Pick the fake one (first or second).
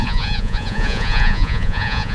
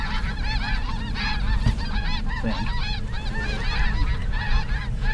first